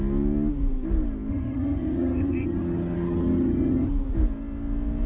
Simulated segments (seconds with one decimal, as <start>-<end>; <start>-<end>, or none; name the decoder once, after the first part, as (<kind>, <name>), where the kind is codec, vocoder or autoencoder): 1.3-3.9 (vocoder, HiFi-GAN)